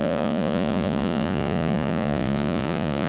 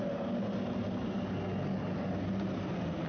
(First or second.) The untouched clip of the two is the second